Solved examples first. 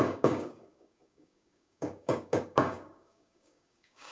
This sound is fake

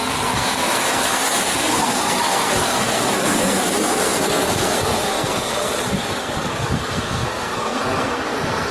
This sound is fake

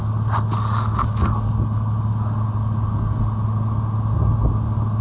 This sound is real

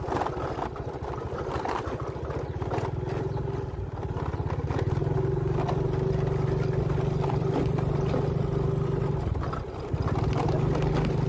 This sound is real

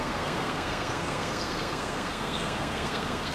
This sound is fake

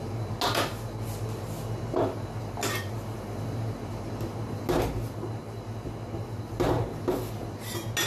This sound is real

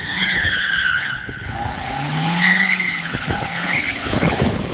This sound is fake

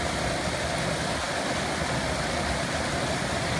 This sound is real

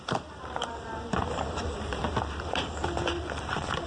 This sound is fake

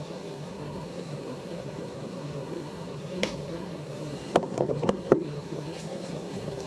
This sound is fake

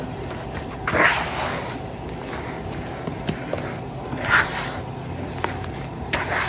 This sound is real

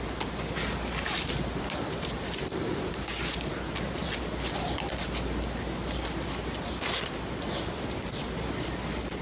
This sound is real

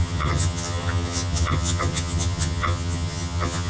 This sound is fake